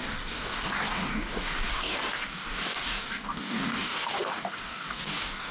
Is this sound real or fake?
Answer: fake